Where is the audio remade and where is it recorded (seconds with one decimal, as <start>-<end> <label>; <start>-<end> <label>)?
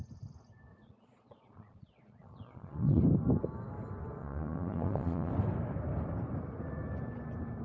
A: 0.0-0.7 recorded; 0.7-3.0 remade; 3.0-4.2 recorded; 4.2-5.3 remade; 5.3-7.6 recorded